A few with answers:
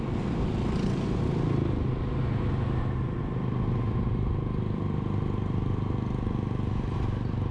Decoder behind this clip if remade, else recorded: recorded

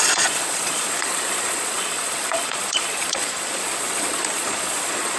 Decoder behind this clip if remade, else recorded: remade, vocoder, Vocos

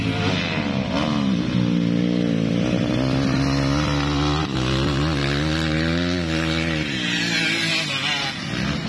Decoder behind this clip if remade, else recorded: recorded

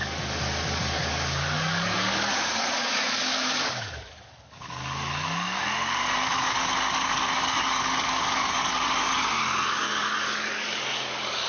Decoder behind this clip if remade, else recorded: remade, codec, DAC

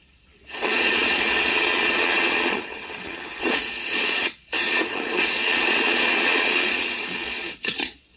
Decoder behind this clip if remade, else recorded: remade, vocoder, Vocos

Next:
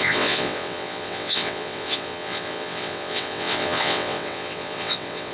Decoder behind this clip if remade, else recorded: remade, vocoder, WaveNeXt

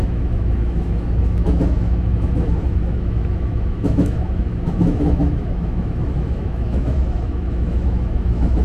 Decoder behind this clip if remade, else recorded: remade, autoencoder, DAC-VAE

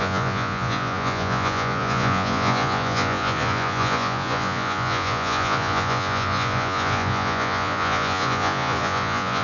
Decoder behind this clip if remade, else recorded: remade, vocoder, Vocos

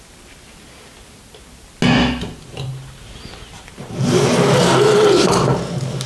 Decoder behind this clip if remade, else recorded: recorded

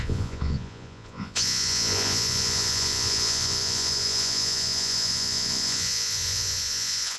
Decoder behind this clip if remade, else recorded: remade, vocoder, Vocos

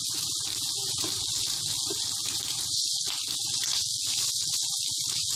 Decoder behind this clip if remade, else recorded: recorded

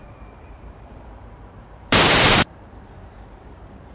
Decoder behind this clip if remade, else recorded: remade, vocoder, BigVGAN v2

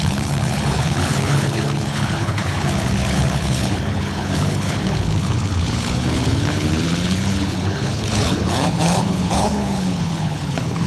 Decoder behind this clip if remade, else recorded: remade, codec, HILCodec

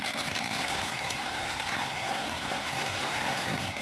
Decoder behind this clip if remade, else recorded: remade, codec, SNAC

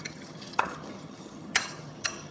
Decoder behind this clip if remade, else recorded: remade, vocoder, HiFi-GAN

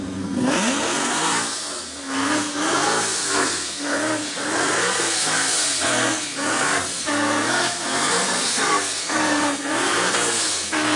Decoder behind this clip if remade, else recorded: remade, codec, SNAC